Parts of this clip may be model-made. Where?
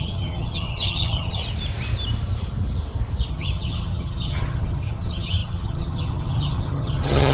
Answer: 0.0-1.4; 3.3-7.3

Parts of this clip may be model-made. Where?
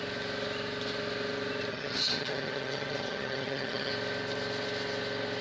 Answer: 1.7-3.9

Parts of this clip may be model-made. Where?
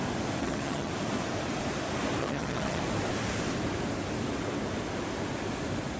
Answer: 0.4-0.9; 2.2-2.8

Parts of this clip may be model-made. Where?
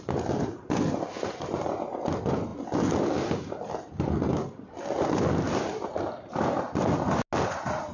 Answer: none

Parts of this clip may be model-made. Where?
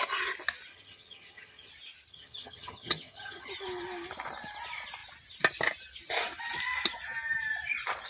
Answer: 0.7-1.7; 2.1-3.5